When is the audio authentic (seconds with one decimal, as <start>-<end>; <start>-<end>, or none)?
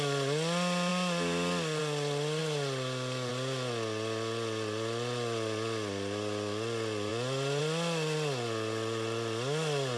0.0-10.0